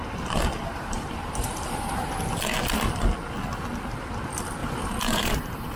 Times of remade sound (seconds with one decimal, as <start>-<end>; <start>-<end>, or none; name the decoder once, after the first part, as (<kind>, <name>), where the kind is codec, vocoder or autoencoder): 0.7-2.3 (vocoder, BigVGAN v2); 4.6-5.8